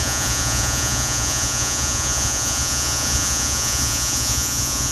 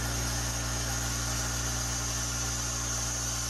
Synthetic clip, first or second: first